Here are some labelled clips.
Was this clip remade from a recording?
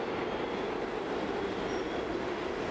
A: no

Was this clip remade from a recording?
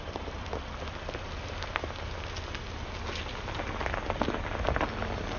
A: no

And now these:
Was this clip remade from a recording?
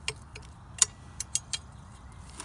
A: no